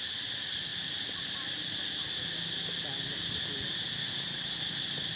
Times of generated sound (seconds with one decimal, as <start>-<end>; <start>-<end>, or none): none